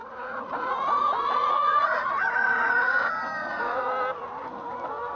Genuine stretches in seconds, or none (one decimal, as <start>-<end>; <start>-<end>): 3.0-3.4; 3.9-5.2

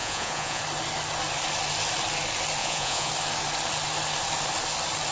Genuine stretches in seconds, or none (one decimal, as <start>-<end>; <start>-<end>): 0.6-2.6; 3.1-5.1